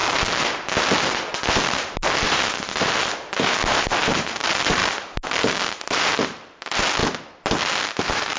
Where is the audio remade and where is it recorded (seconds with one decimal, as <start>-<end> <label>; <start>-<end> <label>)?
0.0-1.5 recorded; 1.5-4.8 remade; 4.8-5.7 recorded; 5.7-7.0 remade; 7.0-8.0 recorded; 8.0-8.4 remade